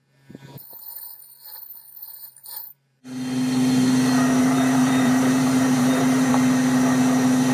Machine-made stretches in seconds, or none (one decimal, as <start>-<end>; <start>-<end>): 2.0-3.0; 4.4-6.3